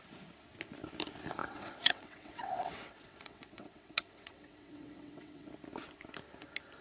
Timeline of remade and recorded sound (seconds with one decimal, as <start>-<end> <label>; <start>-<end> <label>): 0.0-1.4 recorded; 1.4-5.5 remade; 5.5-6.8 recorded